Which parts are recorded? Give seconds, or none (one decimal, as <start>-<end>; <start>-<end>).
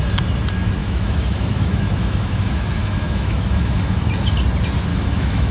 0.0-0.8; 4.1-4.9